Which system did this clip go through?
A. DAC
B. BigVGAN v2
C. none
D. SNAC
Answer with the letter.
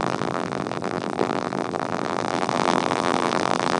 B